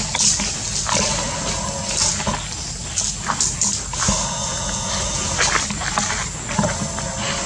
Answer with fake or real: real